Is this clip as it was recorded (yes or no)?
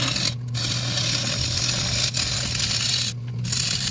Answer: yes